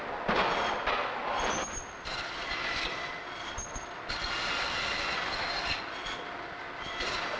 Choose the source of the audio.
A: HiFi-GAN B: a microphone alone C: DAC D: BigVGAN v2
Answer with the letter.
B